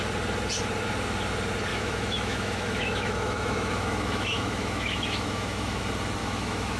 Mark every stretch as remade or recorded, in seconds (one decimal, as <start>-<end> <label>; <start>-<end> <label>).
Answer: 0.0-1.7 recorded; 1.7-5.8 remade; 5.8-6.2 recorded; 6.2-6.8 remade